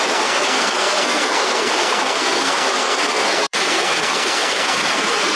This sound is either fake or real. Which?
fake